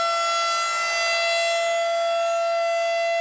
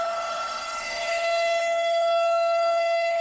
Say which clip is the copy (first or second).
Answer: second